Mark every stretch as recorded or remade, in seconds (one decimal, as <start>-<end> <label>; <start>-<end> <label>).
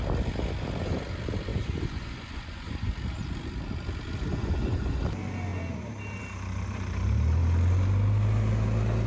0.0-1.5 recorded; 1.5-2.9 remade; 2.9-4.3 recorded; 4.3-5.0 remade; 5.0-9.1 recorded